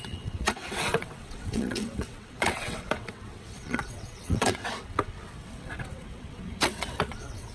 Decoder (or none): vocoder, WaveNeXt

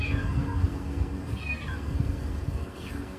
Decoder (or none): codec, SNAC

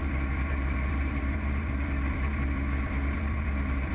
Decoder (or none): vocoder, BigVGAN v2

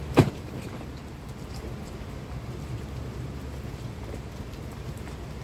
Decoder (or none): vocoder, BigVGAN v2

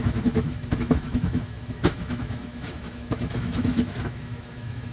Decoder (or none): autoencoder, DAC-VAE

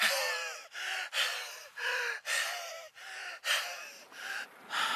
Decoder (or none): none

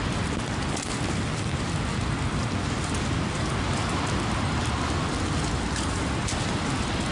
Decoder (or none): none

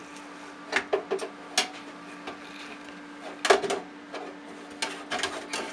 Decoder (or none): none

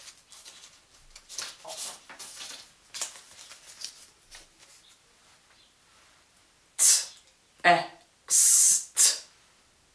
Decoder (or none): none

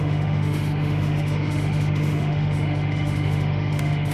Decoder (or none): autoencoder, DAC-VAE